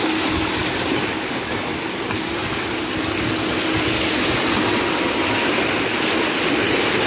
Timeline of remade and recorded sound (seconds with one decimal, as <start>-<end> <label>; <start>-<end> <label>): 0.0-7.1 recorded